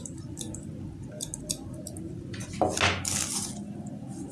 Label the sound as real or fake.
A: real